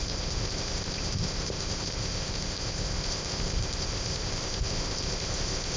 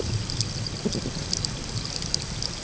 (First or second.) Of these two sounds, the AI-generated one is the first